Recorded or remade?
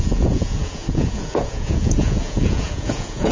remade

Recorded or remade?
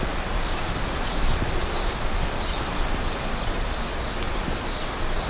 recorded